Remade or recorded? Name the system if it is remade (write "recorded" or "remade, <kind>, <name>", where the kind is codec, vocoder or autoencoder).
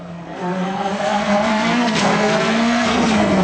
remade, codec, SNAC